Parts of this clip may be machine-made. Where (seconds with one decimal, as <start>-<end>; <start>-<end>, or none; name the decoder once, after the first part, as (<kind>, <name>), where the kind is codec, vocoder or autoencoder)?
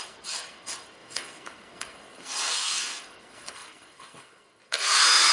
0.0-5.3 (codec, SNAC)